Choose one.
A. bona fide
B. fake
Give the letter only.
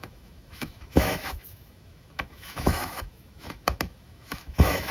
B